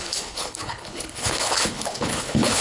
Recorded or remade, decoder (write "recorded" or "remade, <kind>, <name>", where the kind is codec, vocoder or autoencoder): remade, codec, HILCodec